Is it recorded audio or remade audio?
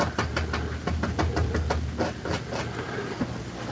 recorded